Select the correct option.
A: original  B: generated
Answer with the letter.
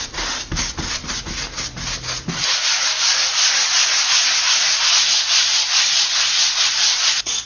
A